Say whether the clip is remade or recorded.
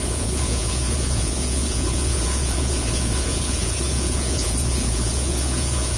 remade